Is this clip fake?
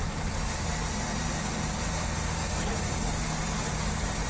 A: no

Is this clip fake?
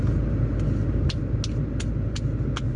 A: no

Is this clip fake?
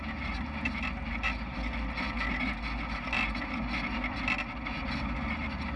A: no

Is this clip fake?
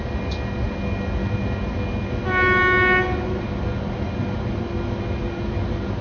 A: no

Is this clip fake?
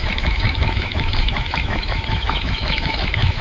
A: yes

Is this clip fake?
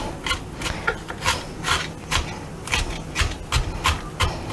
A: no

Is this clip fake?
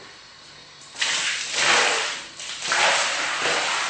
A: no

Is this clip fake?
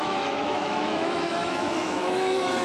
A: yes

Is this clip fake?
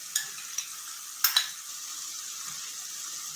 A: no